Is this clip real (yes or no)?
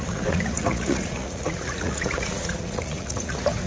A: no